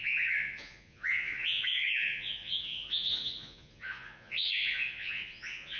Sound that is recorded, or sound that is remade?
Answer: remade